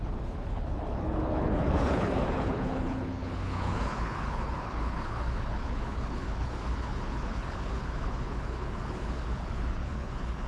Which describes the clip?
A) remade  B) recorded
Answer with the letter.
A